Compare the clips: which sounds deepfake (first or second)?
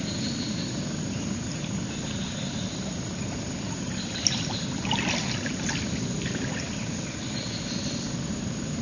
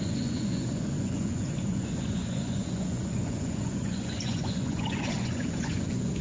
second